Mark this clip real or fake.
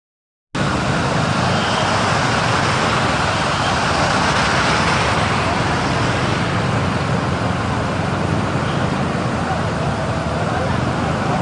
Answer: real